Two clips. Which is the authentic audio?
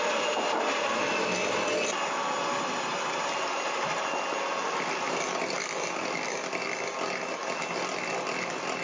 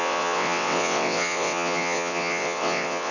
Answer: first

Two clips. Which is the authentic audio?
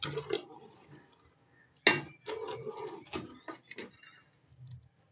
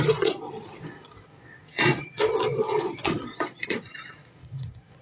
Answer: first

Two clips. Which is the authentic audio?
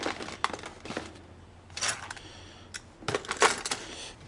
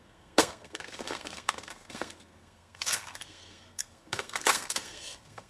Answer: first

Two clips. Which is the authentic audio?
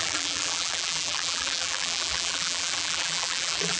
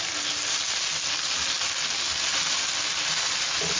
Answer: second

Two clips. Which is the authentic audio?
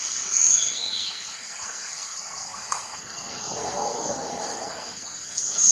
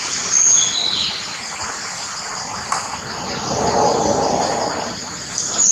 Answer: second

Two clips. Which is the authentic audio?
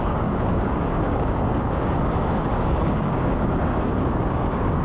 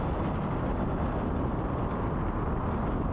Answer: second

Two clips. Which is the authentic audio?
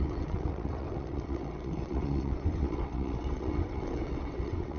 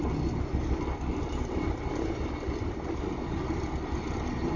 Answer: second